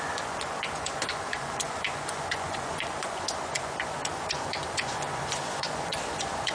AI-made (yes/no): yes